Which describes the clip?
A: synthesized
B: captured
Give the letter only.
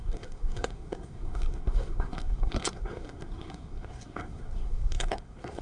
A